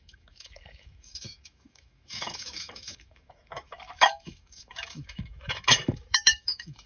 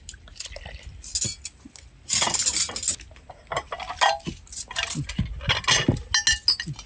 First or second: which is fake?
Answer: first